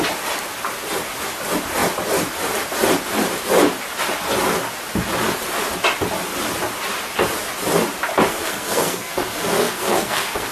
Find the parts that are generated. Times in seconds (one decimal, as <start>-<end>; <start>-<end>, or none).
8.3-10.5

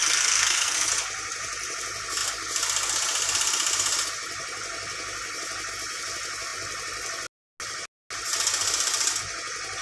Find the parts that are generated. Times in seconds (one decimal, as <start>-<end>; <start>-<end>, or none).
0.0-0.9

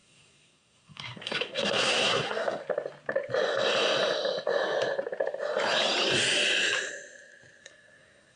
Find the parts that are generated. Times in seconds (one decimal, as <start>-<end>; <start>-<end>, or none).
0.0-2.6; 7.6-8.4

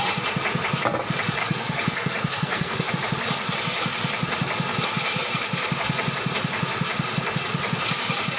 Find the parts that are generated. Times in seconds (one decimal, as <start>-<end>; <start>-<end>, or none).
1.4-2.9